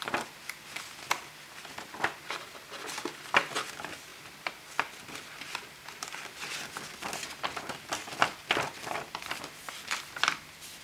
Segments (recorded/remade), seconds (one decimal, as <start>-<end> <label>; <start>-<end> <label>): 0.0-10.8 recorded